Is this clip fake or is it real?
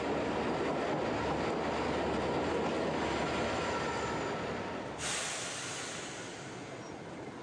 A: real